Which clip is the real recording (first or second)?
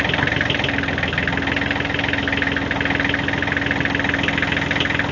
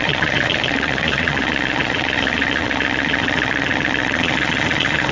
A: first